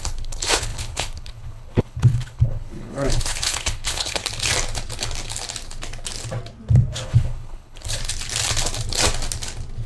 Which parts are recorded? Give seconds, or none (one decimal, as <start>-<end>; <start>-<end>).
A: 4.2-6.9; 8.0-9.9